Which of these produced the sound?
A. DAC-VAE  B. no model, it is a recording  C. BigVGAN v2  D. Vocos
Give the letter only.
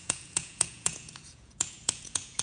D